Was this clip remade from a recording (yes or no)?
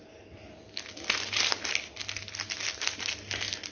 no